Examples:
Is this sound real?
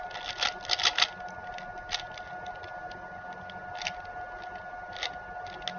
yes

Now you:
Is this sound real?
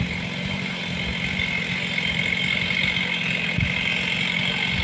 yes